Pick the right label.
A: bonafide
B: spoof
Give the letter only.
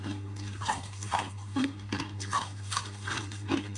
B